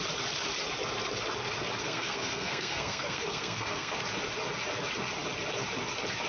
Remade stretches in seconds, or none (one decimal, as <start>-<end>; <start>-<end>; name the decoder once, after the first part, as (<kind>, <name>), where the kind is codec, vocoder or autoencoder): 1.8-4.0 (codec, SNAC)